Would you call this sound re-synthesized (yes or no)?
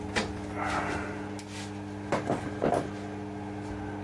no